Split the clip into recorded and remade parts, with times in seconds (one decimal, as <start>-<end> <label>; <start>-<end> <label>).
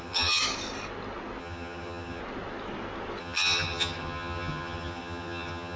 0.0-0.4 remade; 0.4-1.4 recorded; 1.4-2.2 remade; 2.2-3.2 recorded; 3.2-5.8 remade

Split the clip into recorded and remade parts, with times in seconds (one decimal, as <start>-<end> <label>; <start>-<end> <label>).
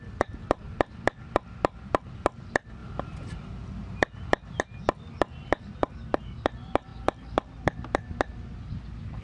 0.0-9.2 recorded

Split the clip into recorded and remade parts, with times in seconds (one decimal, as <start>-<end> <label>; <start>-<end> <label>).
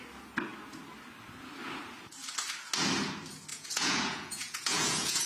0.0-3.5 recorded; 3.5-5.3 remade